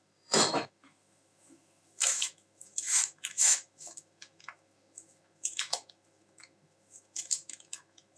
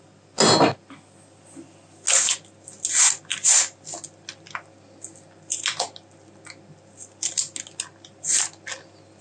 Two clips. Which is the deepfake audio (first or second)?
first